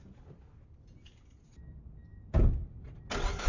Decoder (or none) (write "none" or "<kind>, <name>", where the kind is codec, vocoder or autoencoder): none